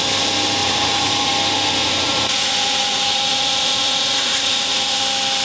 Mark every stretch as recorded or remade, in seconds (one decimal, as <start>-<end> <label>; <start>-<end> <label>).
0.0-0.6 recorded; 0.6-1.3 remade; 1.3-1.8 recorded; 1.8-5.0 remade; 5.0-5.4 recorded